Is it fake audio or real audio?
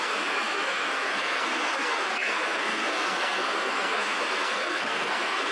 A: fake